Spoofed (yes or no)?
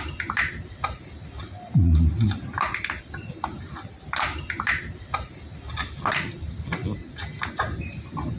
no